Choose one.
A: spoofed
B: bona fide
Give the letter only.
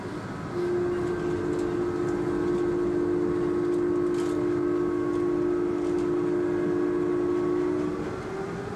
B